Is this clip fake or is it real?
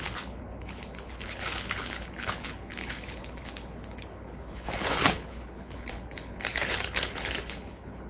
fake